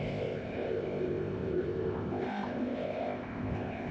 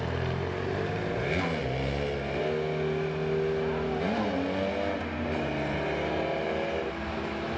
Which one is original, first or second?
second